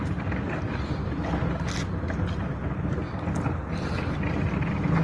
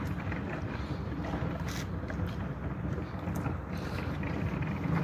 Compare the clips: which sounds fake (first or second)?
second